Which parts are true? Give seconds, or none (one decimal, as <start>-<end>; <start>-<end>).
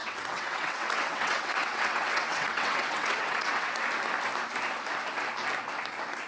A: 3.8-6.3